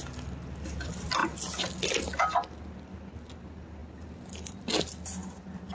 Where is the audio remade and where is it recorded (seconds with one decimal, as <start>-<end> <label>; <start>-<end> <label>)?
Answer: 0.0-5.7 recorded

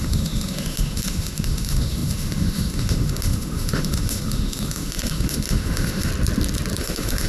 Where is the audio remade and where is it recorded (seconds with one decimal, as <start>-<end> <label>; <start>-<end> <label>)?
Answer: 0.0-6.1 remade; 6.1-6.8 recorded; 6.8-7.3 remade